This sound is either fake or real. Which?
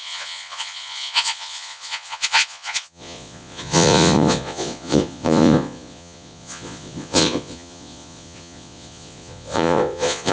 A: fake